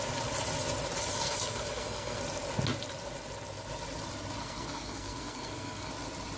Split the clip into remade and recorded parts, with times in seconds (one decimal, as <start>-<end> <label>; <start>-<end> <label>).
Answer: 0.0-1.1 recorded; 1.1-2.2 remade; 2.2-4.4 recorded; 4.4-5.9 remade; 5.9-6.4 recorded

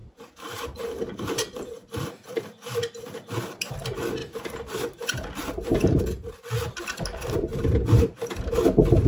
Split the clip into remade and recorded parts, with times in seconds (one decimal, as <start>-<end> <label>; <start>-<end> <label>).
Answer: 0.0-3.7 remade; 3.7-4.2 recorded; 4.2-6.4 remade; 6.4-7.5 recorded; 7.5-8.4 remade; 8.4-9.1 recorded

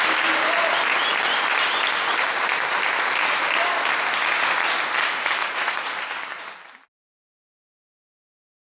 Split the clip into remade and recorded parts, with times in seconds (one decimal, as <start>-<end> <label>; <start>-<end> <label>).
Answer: 0.0-5.4 recorded; 5.4-5.9 remade; 5.9-8.7 recorded

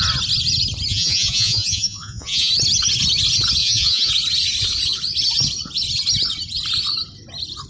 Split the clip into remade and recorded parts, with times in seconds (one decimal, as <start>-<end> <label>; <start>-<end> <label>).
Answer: 0.0-0.9 recorded; 0.9-2.5 remade; 2.5-3.6 recorded; 3.6-4.1 remade; 4.1-7.7 recorded

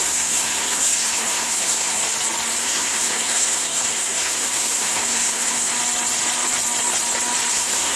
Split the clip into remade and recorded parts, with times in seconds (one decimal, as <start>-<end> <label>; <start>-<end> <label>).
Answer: 0.0-2.0 remade; 2.0-2.6 recorded; 2.6-5.7 remade; 5.7-7.5 recorded; 7.5-8.0 remade

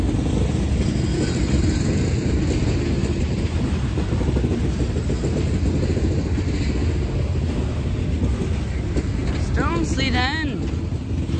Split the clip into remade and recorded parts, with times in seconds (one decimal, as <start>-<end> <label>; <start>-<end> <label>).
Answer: 0.0-3.0 recorded; 3.0-3.5 remade; 3.5-11.4 recorded